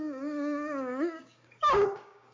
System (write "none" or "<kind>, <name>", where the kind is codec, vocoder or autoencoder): codec, DAC